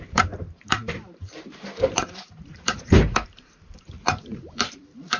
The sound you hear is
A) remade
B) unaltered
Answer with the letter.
A